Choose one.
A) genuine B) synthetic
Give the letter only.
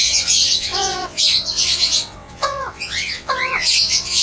B